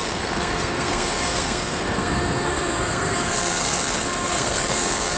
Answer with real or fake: fake